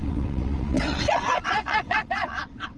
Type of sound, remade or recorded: remade